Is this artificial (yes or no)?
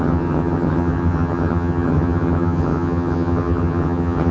yes